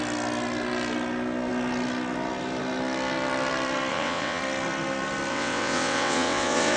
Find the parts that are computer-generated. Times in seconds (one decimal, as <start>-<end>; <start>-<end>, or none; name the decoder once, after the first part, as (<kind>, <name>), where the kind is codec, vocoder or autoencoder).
3.9-4.4 (vocoder, WaveNeXt); 5.3-6.8